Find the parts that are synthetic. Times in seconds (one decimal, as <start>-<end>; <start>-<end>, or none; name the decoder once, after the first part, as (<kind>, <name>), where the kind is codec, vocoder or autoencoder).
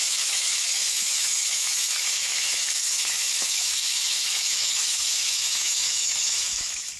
0.0-7.0 (autoencoder, DAC-VAE)